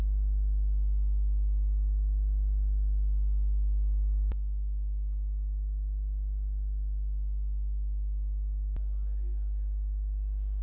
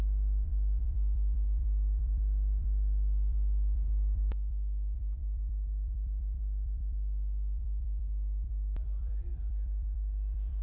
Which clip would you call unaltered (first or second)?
first